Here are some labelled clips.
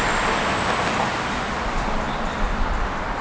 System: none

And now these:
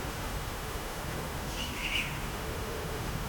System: autoencoder, DAC-VAE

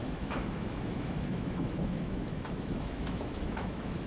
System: autoencoder, DAC-VAE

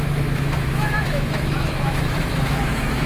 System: autoencoder, DAC-VAE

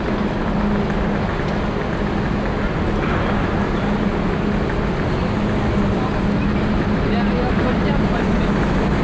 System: none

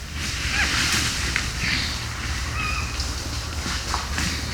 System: none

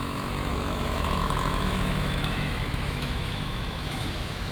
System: autoencoder, DAC-VAE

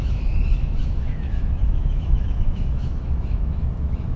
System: autoencoder, DAC-VAE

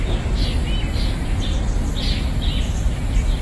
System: none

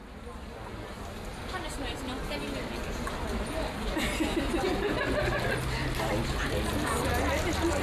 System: none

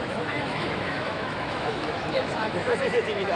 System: autoencoder, DAC-VAE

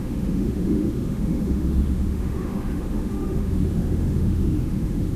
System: autoencoder, DAC-VAE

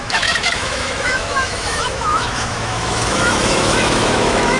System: autoencoder, DAC-VAE